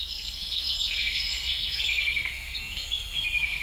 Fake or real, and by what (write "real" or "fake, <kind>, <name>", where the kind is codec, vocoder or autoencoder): fake, codec, SNAC